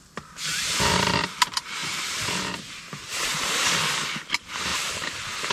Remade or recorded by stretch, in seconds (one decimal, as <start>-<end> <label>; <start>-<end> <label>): 0.0-0.5 recorded; 0.5-1.1 remade; 1.1-1.8 recorded; 1.8-3.6 remade; 3.6-4.7 recorded; 4.7-5.5 remade